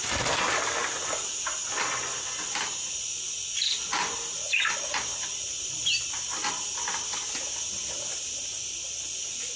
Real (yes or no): yes